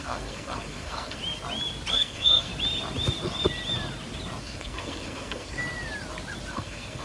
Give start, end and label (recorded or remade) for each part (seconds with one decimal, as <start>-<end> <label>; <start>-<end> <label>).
0.0-1.2 remade; 1.2-1.9 recorded; 1.9-2.5 remade; 2.5-4.4 recorded; 4.4-5.6 remade; 5.6-6.5 recorded; 6.5-7.0 remade